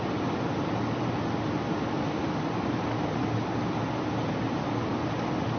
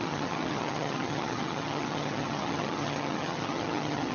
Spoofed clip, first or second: second